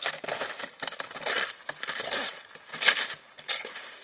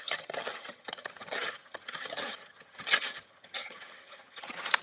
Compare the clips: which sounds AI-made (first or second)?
second